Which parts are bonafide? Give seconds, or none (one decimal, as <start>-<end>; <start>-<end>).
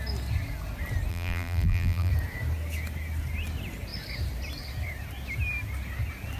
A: 0.0-1.1; 2.1-6.4